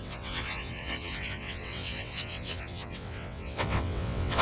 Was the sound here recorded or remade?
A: remade